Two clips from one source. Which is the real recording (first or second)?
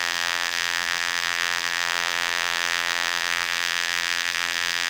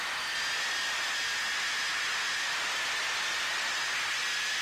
second